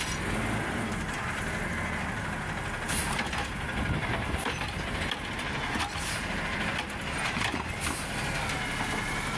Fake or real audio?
real